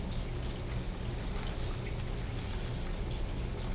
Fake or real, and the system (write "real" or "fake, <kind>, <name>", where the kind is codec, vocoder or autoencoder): real